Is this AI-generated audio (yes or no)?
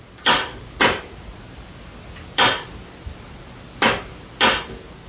no